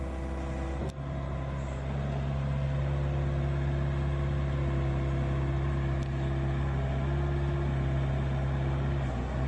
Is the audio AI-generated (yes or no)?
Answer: no